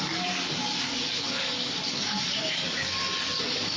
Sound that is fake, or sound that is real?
fake